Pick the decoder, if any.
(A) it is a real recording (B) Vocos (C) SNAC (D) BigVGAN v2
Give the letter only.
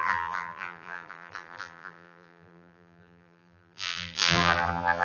D